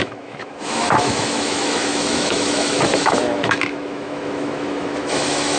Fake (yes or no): yes